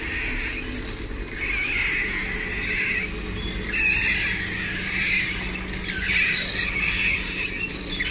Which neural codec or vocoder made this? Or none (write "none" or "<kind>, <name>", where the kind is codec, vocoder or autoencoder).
none